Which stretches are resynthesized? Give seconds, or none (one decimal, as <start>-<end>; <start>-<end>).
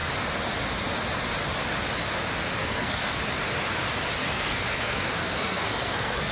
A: 2.6-3.2; 4.2-6.3